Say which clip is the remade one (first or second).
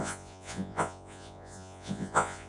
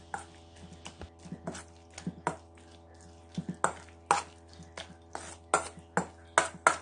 first